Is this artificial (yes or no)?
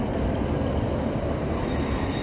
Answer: no